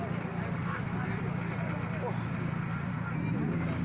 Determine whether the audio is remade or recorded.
recorded